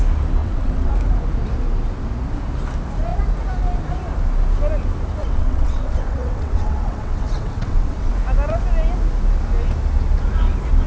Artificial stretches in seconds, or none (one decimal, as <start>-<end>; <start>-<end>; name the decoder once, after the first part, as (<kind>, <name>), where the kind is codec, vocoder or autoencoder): 0.4-0.9 (vocoder, WaveNeXt); 5.2-8.1